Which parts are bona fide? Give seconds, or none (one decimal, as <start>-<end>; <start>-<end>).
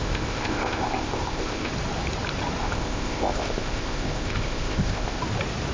1.7-2.6; 5.2-5.7